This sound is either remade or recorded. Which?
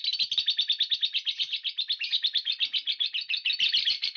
recorded